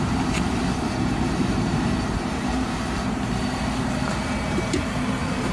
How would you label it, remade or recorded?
remade